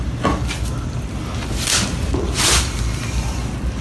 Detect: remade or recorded recorded